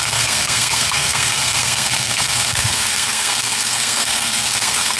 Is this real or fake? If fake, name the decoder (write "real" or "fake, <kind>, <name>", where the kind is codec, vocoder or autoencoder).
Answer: fake, codec, SNAC